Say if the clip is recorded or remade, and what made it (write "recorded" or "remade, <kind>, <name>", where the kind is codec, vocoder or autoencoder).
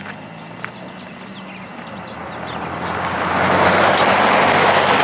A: recorded